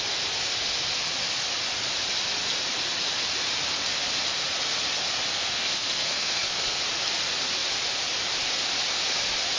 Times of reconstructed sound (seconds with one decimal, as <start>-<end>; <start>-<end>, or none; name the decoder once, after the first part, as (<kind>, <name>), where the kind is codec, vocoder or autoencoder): 5.3-6.8 (codec, SNAC)